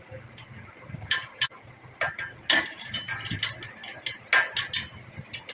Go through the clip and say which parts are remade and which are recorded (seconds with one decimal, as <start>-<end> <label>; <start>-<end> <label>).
0.0-5.5 recorded